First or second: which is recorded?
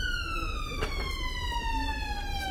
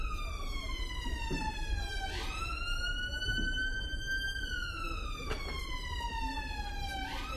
first